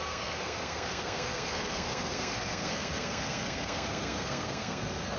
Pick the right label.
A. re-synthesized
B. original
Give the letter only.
A